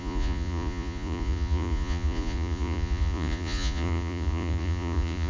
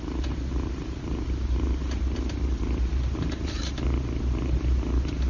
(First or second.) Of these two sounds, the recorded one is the second